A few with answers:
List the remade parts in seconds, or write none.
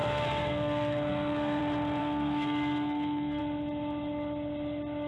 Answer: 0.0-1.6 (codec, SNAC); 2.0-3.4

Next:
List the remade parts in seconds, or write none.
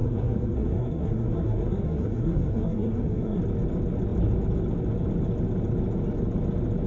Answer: 0.0-3.4 (codec, SNAC)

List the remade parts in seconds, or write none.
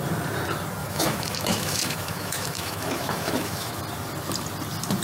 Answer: 0.8-3.8 (autoencoder, DAC-VAE)